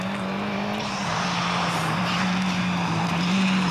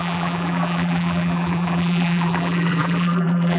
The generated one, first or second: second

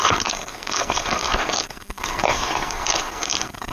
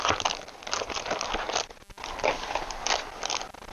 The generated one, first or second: first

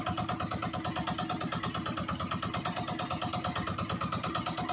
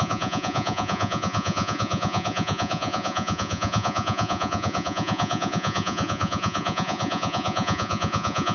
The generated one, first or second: second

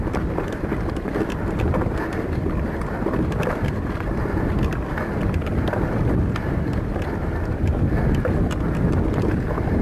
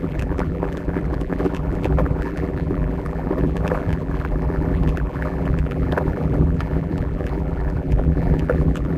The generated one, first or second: second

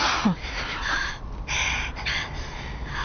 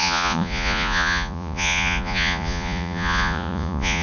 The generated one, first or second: second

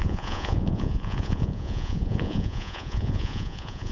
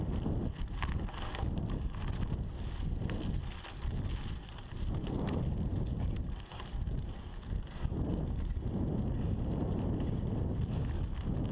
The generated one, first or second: first